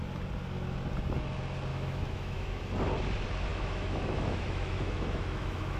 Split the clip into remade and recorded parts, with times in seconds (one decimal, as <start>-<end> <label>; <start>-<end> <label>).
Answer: 0.0-1.7 recorded; 1.7-2.6 remade; 2.6-3.5 recorded; 3.5-5.8 remade